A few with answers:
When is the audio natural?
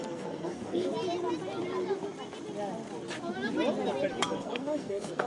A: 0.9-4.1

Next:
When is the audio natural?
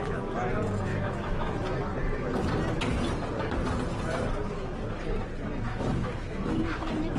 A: 0.0-0.9; 1.5-5.7; 6.6-7.2